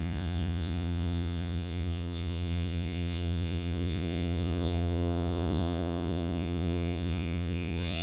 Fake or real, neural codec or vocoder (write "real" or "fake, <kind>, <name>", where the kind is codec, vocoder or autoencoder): fake, vocoder, Vocos